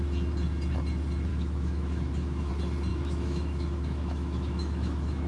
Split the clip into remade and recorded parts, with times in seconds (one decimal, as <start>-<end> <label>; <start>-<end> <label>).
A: 0.0-1.3 recorded; 1.3-2.5 remade; 2.5-2.9 recorded; 2.9-5.3 remade